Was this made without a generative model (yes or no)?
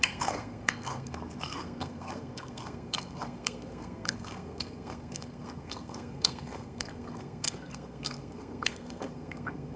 no